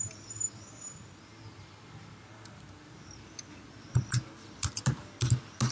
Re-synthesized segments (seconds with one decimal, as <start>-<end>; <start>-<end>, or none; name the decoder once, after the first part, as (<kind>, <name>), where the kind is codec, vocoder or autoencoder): none